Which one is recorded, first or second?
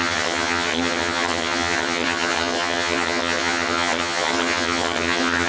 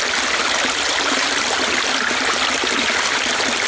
second